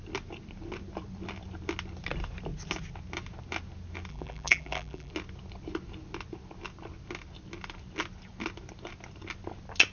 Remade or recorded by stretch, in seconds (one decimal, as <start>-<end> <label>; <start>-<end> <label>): 0.0-4.1 recorded; 4.1-5.1 remade; 5.1-9.9 recorded